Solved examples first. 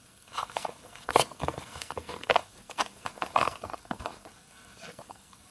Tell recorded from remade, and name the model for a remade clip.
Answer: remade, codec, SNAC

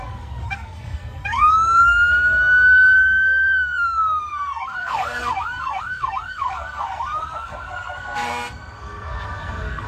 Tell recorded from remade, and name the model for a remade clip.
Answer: remade, codec, SNAC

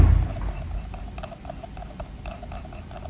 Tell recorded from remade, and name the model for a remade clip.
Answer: recorded